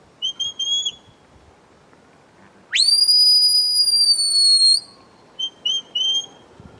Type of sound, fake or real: real